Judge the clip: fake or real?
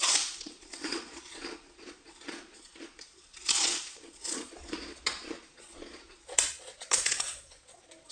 fake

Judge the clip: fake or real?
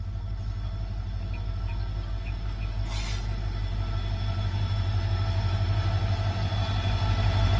real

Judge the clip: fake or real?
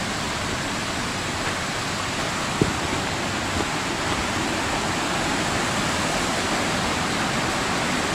real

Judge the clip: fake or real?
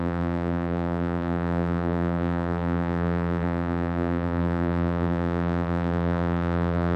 fake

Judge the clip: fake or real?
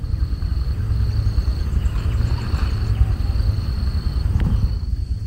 real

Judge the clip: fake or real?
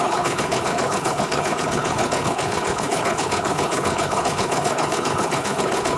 fake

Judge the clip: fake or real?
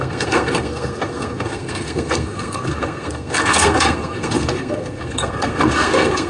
fake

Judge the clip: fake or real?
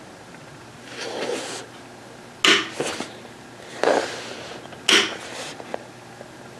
real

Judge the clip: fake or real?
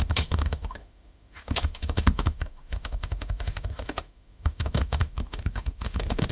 fake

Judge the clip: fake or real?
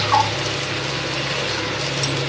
real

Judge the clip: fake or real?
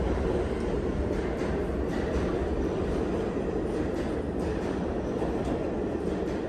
real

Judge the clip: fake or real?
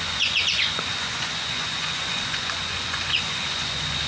fake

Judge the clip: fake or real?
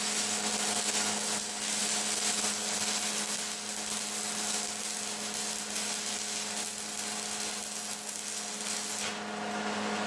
real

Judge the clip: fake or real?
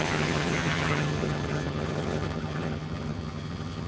fake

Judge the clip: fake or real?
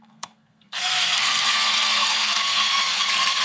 fake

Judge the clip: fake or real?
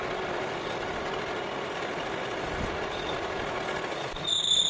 real